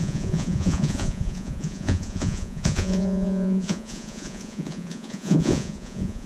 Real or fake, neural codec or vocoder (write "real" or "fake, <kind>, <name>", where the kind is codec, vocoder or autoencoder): fake, vocoder, Vocos